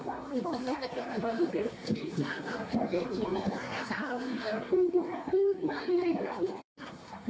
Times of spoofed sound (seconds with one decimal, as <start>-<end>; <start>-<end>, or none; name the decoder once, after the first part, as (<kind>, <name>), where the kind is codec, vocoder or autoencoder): 0.0-7.3 (codec, SNAC)